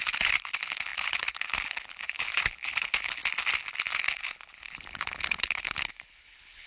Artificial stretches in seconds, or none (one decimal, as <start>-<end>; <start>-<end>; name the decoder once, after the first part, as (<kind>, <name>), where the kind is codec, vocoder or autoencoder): 0.0-3.2 (codec, HILCodec); 3.9-6.7